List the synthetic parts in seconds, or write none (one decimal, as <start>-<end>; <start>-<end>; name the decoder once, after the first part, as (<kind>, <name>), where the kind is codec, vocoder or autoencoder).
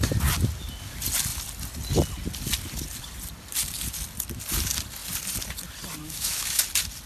6.0-6.6 (autoencoder, DAC-VAE)